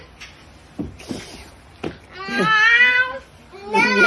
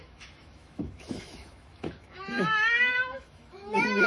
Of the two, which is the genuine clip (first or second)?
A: first